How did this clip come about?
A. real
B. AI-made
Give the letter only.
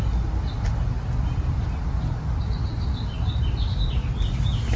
A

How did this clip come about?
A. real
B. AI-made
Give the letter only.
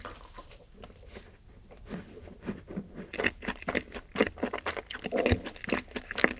A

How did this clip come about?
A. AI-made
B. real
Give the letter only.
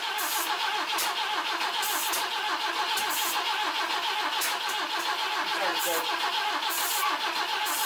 B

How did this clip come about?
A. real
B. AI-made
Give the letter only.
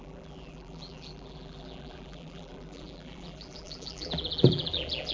B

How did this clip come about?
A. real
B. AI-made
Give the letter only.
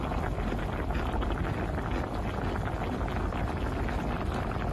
A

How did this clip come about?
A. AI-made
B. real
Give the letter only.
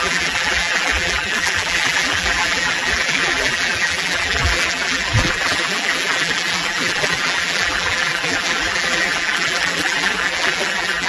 A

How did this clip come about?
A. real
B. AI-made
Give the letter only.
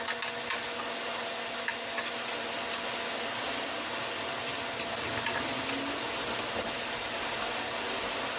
A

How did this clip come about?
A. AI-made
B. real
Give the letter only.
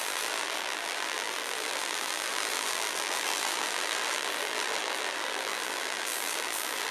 A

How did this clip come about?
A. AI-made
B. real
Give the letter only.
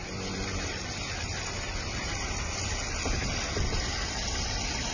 A